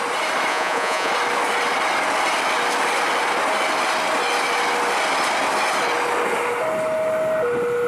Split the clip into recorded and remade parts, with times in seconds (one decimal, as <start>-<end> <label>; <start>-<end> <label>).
0.0-0.5 recorded; 0.5-1.1 remade; 1.1-7.9 recorded